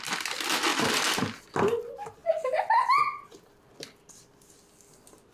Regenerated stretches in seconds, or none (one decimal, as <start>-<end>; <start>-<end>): none